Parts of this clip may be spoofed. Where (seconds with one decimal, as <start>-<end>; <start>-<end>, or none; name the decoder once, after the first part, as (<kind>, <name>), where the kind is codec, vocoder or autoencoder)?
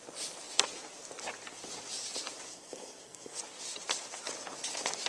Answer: 2.5-3.4 (codec, SNAC)